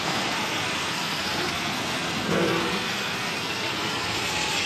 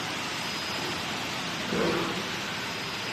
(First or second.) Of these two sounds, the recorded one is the second